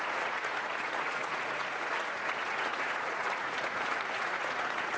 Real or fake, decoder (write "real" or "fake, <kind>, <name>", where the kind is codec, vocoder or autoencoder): fake, vocoder, Vocos